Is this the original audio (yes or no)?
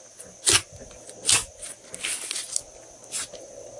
yes